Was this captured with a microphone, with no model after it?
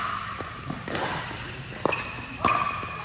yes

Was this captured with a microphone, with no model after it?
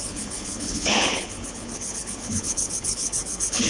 no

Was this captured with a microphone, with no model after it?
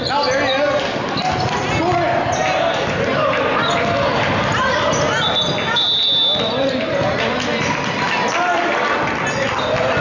yes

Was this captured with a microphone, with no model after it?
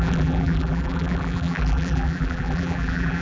no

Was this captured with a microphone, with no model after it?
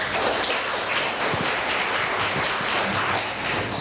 yes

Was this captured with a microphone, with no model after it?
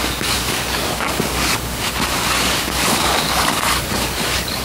no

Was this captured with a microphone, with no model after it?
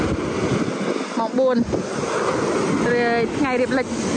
yes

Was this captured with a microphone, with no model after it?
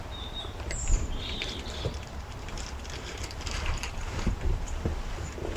no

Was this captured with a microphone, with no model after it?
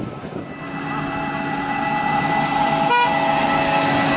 yes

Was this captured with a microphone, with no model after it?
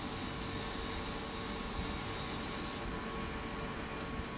yes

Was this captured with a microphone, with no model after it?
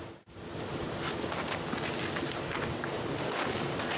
yes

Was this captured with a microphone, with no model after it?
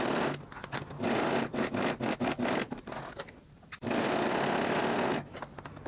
yes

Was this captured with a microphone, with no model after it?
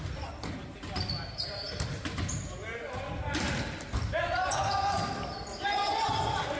yes